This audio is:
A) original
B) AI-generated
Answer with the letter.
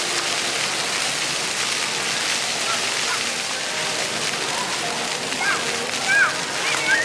A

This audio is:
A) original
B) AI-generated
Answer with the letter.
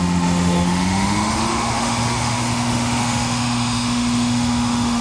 B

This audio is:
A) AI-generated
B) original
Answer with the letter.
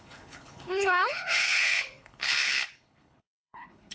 A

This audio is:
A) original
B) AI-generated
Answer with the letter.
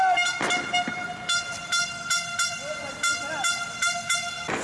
A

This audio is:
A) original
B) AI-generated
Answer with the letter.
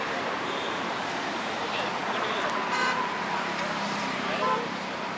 B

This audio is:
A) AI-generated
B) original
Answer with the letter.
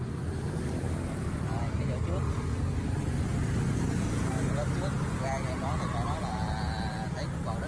B